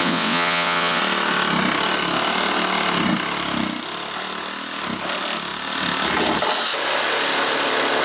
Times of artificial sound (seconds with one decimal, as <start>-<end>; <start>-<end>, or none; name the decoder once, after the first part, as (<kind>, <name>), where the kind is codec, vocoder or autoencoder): 0.0-1.0 (vocoder, WaveNeXt)